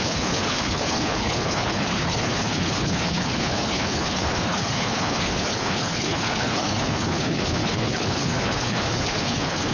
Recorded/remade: remade